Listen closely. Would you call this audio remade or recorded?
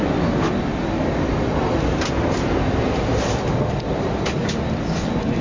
recorded